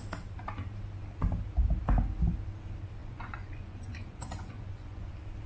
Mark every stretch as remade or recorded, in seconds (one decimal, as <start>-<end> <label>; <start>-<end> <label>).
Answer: 0.0-3.0 recorded; 3.0-5.1 remade; 5.1-5.5 recorded